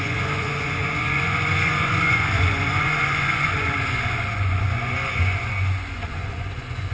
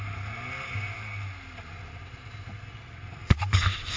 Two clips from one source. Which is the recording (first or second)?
second